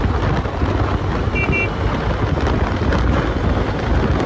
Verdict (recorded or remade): recorded